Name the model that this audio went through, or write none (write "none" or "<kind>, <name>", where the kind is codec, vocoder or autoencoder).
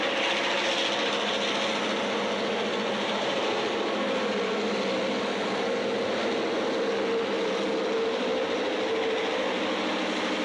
none